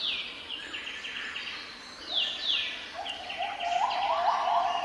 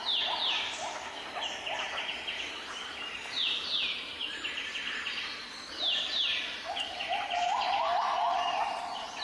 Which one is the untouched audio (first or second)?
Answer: first